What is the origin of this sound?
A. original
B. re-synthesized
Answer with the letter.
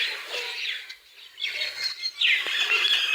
A